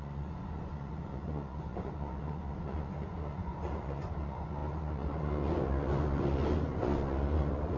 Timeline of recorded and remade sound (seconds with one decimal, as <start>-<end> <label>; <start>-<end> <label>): 0.0-7.8 remade